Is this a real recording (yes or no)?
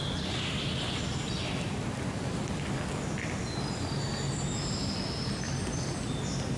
yes